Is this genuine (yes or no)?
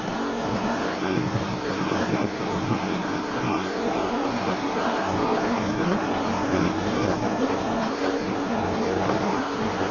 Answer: no